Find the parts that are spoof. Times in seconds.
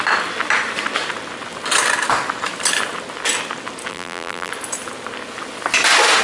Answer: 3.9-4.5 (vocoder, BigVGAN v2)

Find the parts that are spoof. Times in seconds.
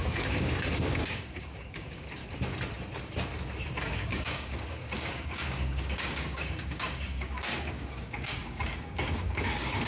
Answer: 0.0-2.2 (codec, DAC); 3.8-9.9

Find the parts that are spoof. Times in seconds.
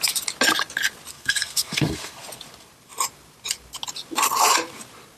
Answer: 1.1-2.2 (codec, SNAC)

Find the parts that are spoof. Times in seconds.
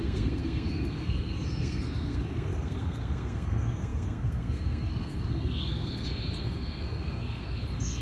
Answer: 0.0-8.0 (codec, SNAC)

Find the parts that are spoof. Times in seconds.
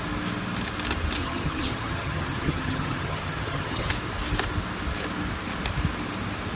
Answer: 1.2-3.9 (vocoder, HiFi-GAN)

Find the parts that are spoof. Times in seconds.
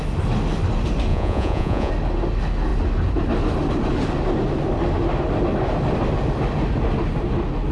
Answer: 1.1-1.9 (vocoder, Vocos)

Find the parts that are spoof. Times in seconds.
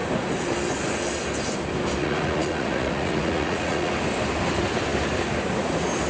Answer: 2.0-3.9 (vocoder, Vocos)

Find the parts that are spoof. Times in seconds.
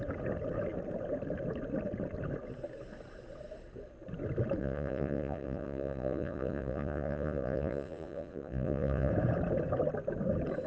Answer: 4.6-9.1 (vocoder, Vocos)